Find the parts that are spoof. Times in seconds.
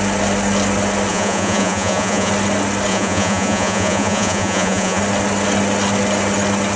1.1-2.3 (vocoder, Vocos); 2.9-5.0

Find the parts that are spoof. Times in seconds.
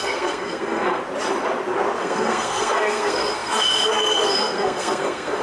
0.0-1.0 (codec, SNAC); 2.0-5.4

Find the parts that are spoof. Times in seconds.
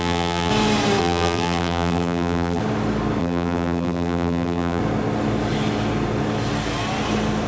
0.0-0.5 (vocoder, BigVGAN v2); 1.0-2.6; 3.2-4.8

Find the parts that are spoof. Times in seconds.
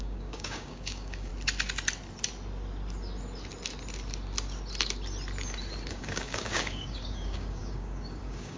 0.0-1.3 (codec, DAC); 5.9-8.6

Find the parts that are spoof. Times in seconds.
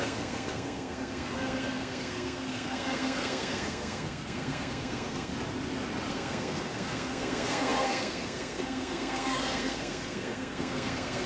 0.0-5.3 (codec, SNAC); 6.1-11.3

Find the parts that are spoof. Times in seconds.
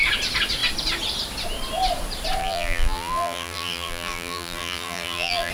2.4-5.5 (vocoder, BigVGAN v2)